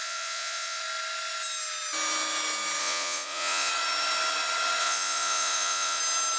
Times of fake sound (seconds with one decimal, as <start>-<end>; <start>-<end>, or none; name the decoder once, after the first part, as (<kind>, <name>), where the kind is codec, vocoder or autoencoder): 0.0-0.8 (vocoder, Vocos); 2.8-3.7; 4.8-6.0